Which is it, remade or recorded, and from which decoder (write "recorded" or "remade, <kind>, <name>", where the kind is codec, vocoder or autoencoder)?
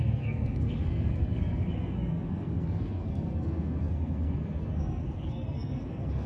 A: remade, codec, SNAC